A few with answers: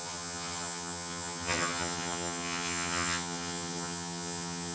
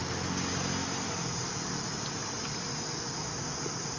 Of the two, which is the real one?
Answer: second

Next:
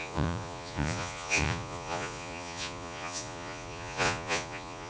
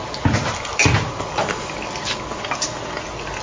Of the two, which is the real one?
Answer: second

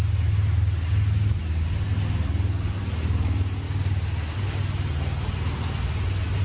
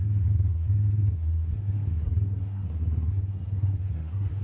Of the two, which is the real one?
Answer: first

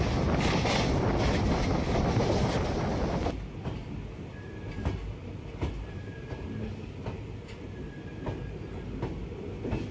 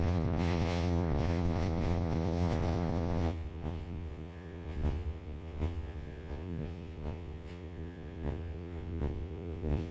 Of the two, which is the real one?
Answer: first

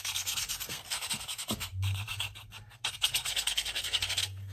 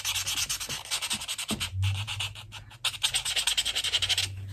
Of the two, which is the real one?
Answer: second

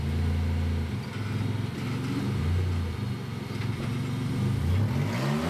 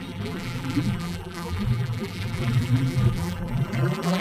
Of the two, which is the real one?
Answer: first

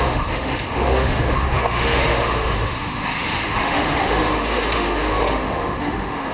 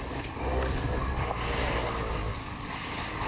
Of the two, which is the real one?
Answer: second